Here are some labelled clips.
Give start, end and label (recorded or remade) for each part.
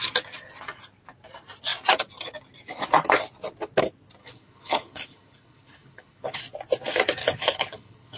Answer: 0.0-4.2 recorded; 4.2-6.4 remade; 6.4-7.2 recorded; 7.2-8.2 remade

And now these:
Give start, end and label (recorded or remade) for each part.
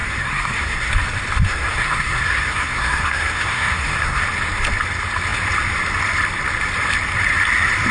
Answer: 0.0-0.9 remade; 0.9-1.5 recorded; 1.5-4.2 remade; 4.2-7.9 recorded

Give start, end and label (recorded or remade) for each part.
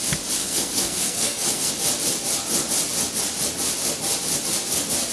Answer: 0.0-0.4 recorded; 0.4-1.7 remade; 1.7-5.1 recorded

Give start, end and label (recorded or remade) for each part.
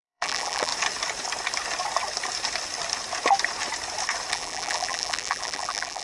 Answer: 0.0-0.7 remade; 0.7-4.3 recorded; 4.3-6.0 remade